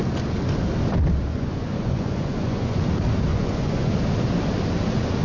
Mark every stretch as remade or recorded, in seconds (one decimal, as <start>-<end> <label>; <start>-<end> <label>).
0.0-1.3 recorded; 1.3-2.8 remade; 2.8-3.3 recorded; 3.3-3.9 remade; 3.9-5.2 recorded